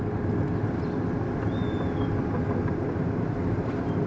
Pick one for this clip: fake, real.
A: real